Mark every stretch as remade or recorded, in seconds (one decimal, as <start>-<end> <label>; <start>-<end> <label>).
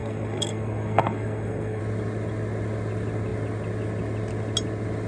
0.0-1.8 remade; 1.8-5.1 recorded